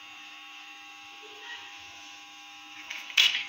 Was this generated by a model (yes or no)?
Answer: yes